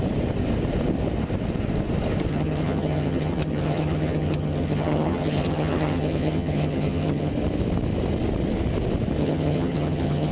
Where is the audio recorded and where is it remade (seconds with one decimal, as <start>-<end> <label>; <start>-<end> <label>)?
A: 0.0-2.3 recorded; 2.3-7.3 remade; 7.3-9.2 recorded; 9.2-10.3 remade